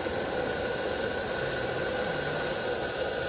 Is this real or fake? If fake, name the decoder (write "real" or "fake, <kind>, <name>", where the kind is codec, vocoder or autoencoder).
real